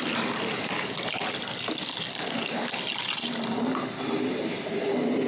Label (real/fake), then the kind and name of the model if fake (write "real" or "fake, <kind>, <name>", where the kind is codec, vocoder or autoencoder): real